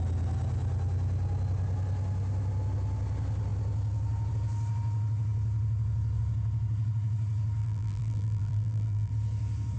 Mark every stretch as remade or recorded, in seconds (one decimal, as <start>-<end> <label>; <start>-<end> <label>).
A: 0.0-7.6 recorded; 7.6-9.1 remade; 9.1-9.8 recorded